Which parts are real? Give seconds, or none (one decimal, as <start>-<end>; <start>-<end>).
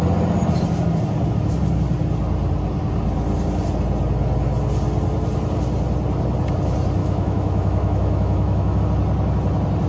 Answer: 0.0-7.0; 8.8-9.9